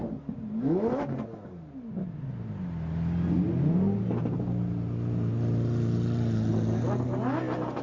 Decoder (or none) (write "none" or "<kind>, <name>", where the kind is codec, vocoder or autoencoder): none